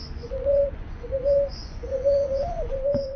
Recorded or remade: remade